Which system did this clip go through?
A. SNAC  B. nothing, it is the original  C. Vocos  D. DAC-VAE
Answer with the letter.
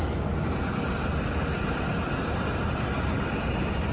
B